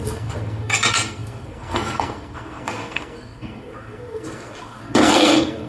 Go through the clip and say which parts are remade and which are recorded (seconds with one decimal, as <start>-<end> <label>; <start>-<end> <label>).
0.0-5.7 remade